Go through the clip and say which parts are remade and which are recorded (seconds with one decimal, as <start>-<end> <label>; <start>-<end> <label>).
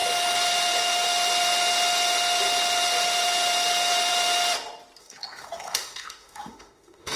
0.0-5.0 recorded; 5.0-7.2 remade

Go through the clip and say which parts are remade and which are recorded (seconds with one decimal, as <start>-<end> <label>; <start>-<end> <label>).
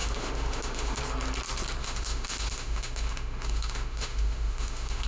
0.0-1.0 remade; 1.0-1.8 recorded; 1.8-5.1 remade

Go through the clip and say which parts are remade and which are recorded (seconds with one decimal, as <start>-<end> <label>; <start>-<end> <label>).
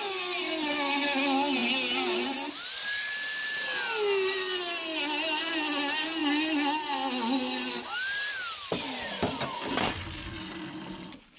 0.0-11.4 recorded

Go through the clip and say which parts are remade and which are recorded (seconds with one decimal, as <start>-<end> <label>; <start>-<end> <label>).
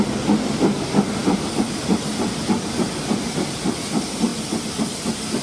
0.0-5.4 recorded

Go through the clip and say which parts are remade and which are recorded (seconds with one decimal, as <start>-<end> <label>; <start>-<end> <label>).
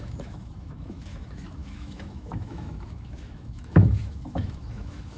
0.0-5.2 remade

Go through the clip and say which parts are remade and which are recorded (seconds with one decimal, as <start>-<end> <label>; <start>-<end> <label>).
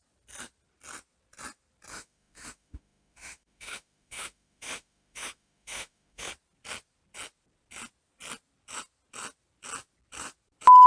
0.0-1.9 recorded; 1.9-6.3 remade; 6.3-10.9 recorded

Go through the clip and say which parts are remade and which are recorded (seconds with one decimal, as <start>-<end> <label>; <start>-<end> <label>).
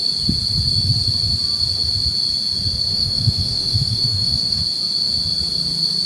0.0-2.9 recorded; 2.9-4.6 remade; 4.6-6.1 recorded